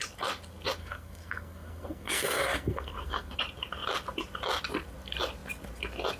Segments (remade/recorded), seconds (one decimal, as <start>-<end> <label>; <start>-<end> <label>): 0.0-0.8 recorded; 0.8-3.4 remade; 3.4-6.2 recorded